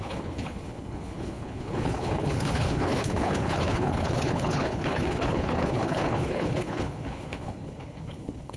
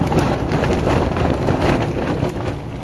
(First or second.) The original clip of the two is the second